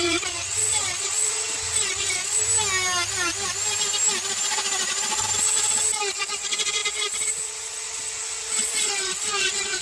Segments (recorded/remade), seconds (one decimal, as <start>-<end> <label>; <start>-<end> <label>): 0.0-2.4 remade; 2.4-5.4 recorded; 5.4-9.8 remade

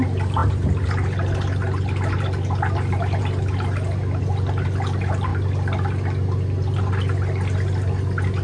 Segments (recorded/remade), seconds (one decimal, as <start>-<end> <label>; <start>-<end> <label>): 0.0-8.4 recorded

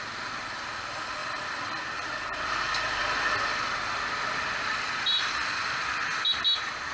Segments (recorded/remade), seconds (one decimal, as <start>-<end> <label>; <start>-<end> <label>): 0.0-6.9 recorded

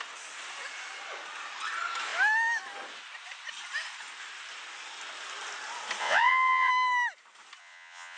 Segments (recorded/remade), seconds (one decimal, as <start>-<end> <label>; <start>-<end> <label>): 0.0-6.0 recorded; 6.0-6.7 remade; 6.7-7.6 recorded; 7.6-8.2 remade

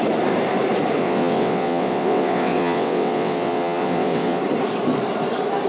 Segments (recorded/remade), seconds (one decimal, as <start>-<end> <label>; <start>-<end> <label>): 0.0-1.0 recorded; 1.0-4.4 remade; 4.4-5.7 recorded

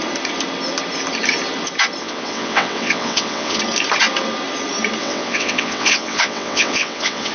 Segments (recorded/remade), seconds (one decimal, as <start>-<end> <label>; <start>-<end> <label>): 0.0-2.0 recorded; 2.0-3.6 remade; 3.6-5.0 recorded; 5.0-7.3 remade